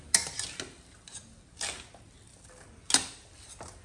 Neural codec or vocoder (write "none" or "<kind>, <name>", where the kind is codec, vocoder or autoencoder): none